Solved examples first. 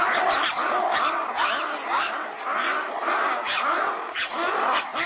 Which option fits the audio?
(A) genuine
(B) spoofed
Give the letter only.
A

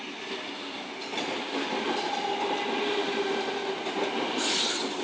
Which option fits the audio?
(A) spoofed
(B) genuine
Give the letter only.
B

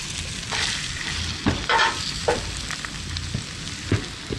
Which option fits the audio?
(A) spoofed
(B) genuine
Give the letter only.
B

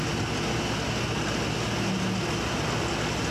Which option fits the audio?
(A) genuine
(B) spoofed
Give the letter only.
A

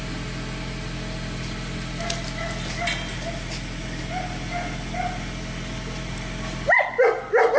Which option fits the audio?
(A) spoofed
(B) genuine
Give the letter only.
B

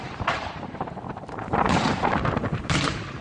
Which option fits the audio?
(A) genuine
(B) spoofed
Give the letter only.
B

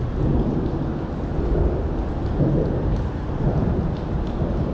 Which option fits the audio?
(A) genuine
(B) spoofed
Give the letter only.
A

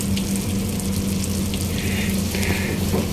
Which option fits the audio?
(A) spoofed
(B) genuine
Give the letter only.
B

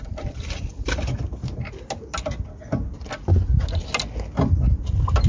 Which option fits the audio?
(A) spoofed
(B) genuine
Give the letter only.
B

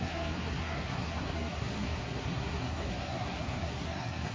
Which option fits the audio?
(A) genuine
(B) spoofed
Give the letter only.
B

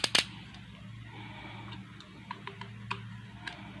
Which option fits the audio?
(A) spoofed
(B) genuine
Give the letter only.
B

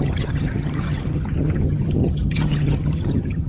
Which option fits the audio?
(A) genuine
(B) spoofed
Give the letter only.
B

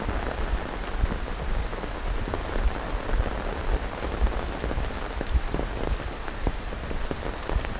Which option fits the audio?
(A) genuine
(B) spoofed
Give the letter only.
A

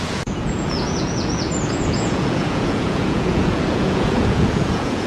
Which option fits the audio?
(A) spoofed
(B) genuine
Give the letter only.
A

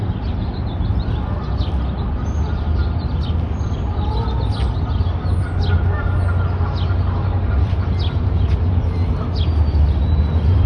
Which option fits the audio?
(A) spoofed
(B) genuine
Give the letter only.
B